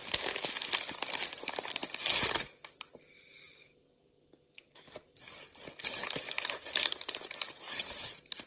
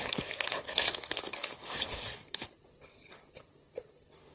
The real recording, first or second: first